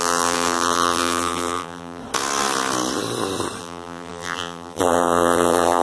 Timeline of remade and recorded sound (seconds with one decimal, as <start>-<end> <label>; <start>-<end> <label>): 0.0-2.0 remade; 2.0-3.6 recorded; 3.6-5.8 remade